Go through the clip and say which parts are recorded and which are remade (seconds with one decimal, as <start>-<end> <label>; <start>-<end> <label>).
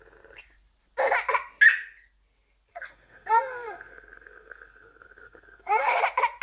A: 0.0-2.7 recorded; 2.7-6.0 remade; 6.0-6.4 recorded